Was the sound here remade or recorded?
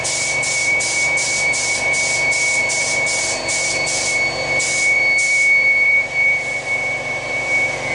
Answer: remade